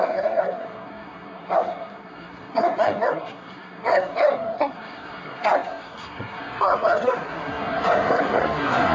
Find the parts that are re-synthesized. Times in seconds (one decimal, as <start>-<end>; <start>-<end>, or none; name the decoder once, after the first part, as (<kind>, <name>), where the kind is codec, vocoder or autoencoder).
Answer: 0.0-8.9 (codec, SNAC)